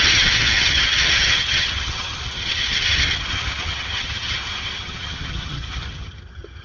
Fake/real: fake